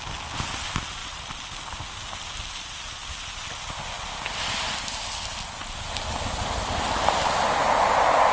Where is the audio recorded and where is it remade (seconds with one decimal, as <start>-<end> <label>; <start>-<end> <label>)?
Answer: 0.0-8.3 recorded